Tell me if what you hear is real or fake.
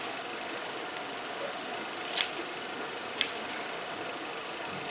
real